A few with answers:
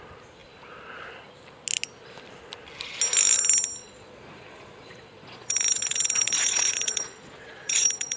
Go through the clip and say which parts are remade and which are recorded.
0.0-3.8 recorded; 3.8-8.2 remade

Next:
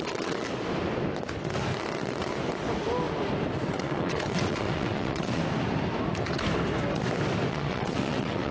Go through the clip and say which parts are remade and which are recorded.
0.0-0.4 remade; 0.4-3.7 recorded; 3.7-5.4 remade; 5.4-7.5 recorded; 7.5-8.5 remade

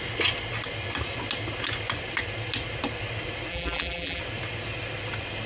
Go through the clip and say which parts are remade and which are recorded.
0.0-3.5 recorded; 3.5-4.2 remade; 4.2-5.5 recorded

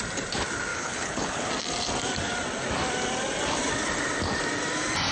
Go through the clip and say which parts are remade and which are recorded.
0.0-0.7 recorded; 0.7-1.5 remade; 1.5-5.1 recorded